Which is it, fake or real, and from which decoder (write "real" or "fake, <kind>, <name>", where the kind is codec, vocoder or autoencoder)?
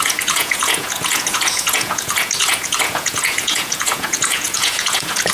fake, vocoder, Vocos